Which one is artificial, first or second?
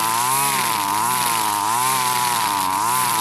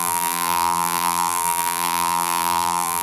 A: second